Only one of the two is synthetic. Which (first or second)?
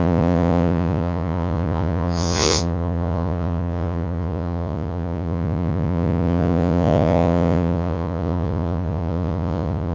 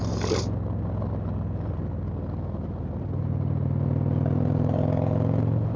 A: first